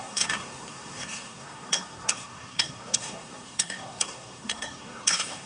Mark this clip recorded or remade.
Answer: remade